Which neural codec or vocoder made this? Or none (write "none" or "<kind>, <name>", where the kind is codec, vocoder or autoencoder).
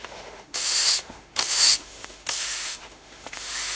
autoencoder, DAC-VAE